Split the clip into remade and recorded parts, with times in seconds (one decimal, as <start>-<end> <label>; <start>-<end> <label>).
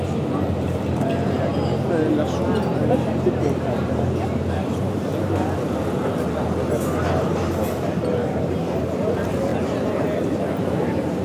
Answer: 0.0-1.5 remade; 1.5-2.9 recorded; 2.9-5.1 remade; 5.1-8.3 recorded; 8.3-9.5 remade; 9.5-10.0 recorded; 10.0-11.2 remade